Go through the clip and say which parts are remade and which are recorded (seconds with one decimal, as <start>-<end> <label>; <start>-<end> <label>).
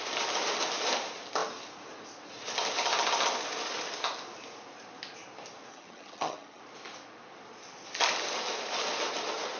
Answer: 0.0-5.7 recorded; 5.7-6.6 remade; 6.6-9.6 recorded